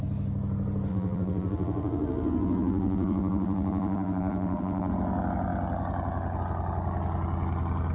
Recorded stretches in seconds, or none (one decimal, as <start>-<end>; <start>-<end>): 0.0-0.9; 4.9-7.9